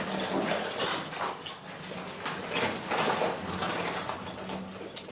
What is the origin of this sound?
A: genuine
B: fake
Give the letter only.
A